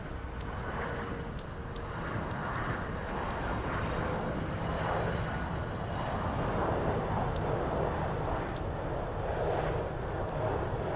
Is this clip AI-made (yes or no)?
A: no